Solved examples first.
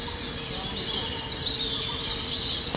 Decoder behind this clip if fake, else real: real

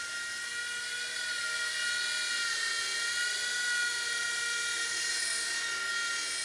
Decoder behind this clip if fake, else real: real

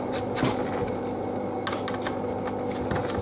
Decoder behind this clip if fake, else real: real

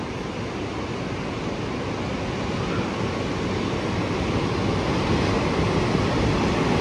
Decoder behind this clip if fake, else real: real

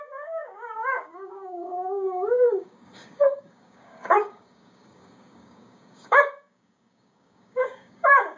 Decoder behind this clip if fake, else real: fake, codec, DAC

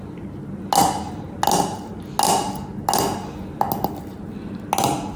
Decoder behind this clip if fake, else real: real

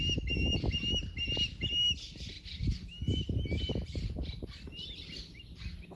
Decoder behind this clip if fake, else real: real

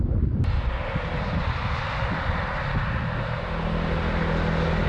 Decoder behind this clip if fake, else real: real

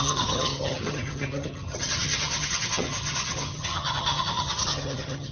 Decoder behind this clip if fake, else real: fake, vocoder, HiFi-GAN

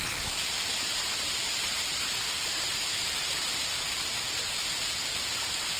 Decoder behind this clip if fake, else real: fake, vocoder, BigVGAN v2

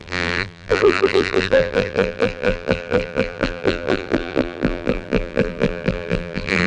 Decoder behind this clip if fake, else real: fake, vocoder, BigVGAN v2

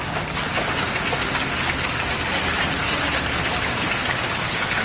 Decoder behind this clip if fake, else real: real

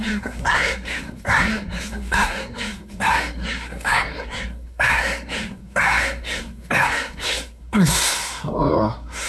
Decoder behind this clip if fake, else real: fake, codec, SNAC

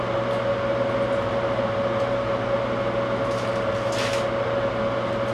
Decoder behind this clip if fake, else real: real